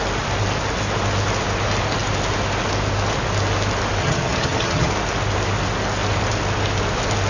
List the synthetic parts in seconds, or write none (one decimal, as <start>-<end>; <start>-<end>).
4.0-4.9